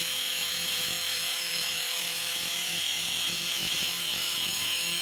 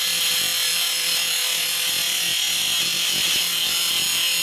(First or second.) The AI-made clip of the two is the first